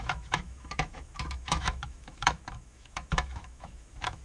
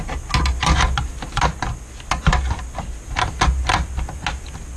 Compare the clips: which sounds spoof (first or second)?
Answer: first